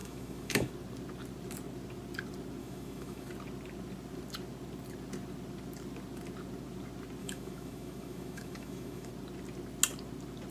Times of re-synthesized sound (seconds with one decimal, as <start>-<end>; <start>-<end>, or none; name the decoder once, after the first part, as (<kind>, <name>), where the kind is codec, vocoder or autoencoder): 0.0-0.7 (autoencoder, DAC-VAE); 2.6-3.3; 7.2-9.1

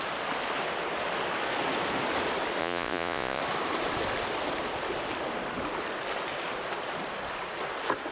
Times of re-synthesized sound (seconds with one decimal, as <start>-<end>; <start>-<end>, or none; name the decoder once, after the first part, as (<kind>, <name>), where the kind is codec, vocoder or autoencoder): 2.6-3.4 (vocoder, Vocos)

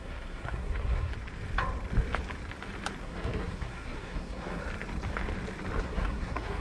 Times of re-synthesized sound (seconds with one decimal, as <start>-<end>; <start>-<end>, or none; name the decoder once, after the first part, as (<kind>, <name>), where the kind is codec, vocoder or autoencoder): 0.0-1.1 (codec, SNAC); 3.0-4.6; 5.8-6.6

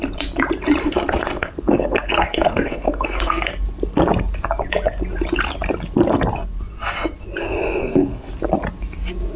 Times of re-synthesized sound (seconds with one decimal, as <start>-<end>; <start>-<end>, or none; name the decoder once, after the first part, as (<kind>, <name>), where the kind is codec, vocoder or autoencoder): 0.8-3.5 (codec, SNAC); 7.8-8.3

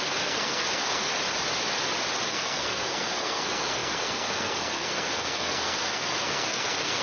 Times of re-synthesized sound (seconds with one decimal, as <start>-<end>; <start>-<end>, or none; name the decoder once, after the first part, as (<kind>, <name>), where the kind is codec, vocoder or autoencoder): 0.0-1.1 (codec, SNAC); 2.3-7.0

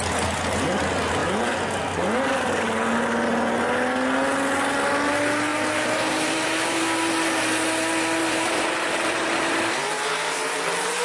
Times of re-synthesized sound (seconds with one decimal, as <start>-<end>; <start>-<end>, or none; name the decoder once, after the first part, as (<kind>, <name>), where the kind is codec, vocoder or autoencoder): 5.5-7.1 (vocoder, BigVGAN v2); 8.2-10.6

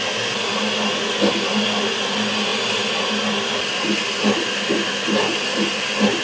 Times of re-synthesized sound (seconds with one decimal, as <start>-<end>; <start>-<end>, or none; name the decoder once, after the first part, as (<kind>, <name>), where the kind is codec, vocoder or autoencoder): none

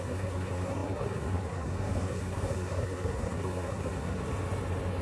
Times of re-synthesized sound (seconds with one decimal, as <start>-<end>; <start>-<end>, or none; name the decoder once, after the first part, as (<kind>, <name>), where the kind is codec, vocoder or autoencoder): 0.0-4.2 (codec, SNAC)